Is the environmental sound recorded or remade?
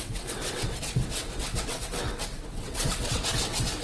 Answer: remade